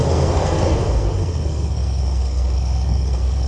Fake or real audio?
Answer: fake